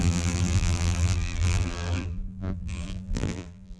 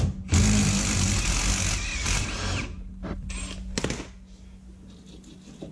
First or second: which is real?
second